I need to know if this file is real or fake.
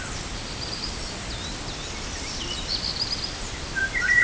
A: real